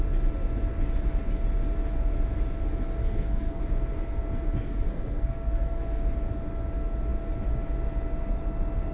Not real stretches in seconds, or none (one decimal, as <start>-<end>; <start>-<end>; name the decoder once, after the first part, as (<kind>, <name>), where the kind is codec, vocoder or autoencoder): 3.0-3.6 (codec, SNAC); 4.6-6.0